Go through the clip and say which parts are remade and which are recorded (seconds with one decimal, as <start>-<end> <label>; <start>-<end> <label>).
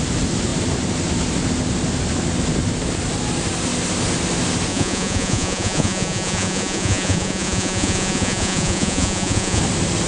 0.0-4.7 recorded; 4.7-9.6 remade; 9.6-10.1 recorded